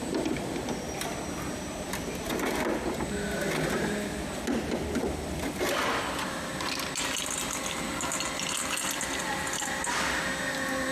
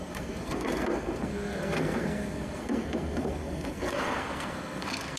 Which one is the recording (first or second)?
first